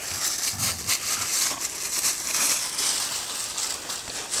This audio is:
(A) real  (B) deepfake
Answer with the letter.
A